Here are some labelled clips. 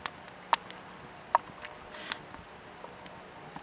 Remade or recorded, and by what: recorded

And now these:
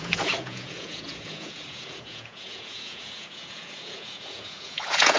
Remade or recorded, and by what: remade, vocoder, Vocos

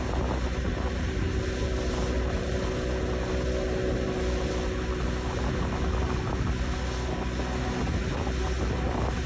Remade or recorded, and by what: recorded